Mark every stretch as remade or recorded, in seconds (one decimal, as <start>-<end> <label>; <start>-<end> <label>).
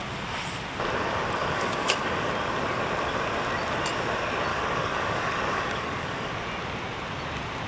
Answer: 0.0-1.4 recorded; 1.4-2.3 remade; 2.3-4.5 recorded; 4.5-6.3 remade; 6.3-7.7 recorded